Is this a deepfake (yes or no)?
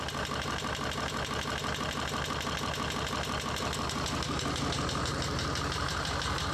no